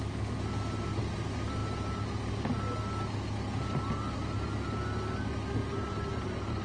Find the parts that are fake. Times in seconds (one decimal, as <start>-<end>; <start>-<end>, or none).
5.6-6.6